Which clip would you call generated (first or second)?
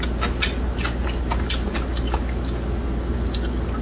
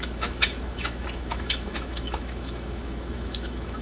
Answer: second